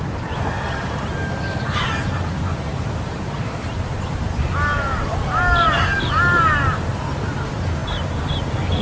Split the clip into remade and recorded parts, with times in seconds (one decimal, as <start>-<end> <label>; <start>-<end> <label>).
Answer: 0.0-2.7 recorded; 2.7-4.0 remade; 4.0-7.8 recorded; 7.8-8.4 remade; 8.4-8.8 recorded